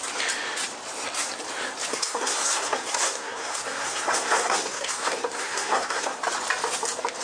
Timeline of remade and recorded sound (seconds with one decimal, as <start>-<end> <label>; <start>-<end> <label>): 0.0-1.9 recorded; 1.9-6.2 remade; 6.2-7.2 recorded